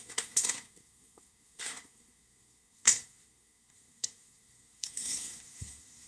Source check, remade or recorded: remade